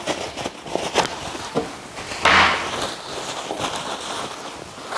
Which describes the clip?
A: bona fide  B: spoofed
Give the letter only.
A